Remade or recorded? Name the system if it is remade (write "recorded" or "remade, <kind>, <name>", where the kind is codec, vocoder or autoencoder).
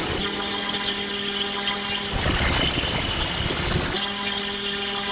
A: recorded